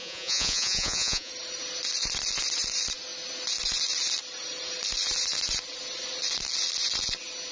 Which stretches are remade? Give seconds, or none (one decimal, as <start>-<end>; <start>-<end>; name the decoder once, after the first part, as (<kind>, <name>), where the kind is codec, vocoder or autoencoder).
0.0-1.3 (vocoder, Vocos)